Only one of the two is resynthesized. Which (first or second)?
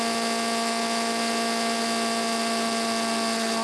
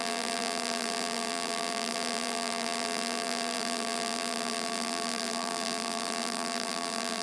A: second